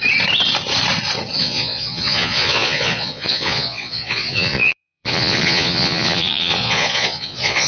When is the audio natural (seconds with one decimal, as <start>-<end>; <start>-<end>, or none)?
0.0-1.4